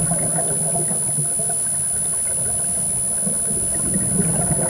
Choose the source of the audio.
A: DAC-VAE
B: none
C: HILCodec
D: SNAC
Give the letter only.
B